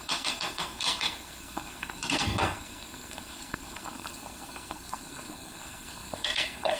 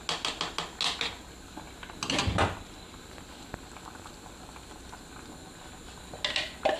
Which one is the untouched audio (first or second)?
second